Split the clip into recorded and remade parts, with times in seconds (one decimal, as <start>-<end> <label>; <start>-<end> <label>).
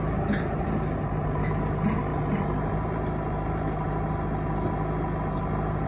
0.0-5.9 recorded